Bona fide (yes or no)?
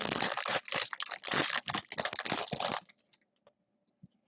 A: yes